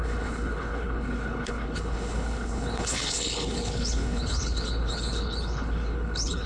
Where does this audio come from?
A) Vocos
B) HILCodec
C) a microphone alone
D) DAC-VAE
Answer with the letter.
B